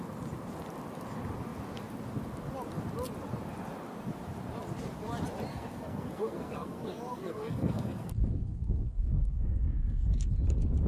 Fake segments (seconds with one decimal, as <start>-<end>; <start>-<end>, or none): 5.5-10.3